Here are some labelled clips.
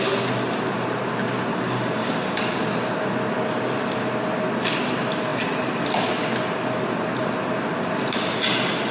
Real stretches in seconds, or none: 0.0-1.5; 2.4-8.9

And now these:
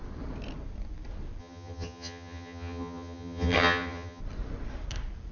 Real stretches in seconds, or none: 0.0-1.4; 4.2-5.3

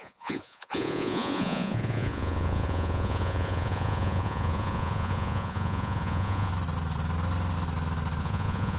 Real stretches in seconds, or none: 6.5-8.2

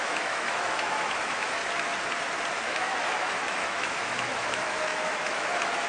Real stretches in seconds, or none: 1.6-2.5